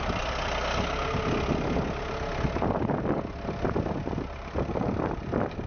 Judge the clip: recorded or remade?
recorded